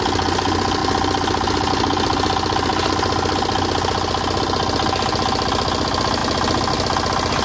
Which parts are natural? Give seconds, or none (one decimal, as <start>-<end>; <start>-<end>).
0.0-0.8; 1.7-7.4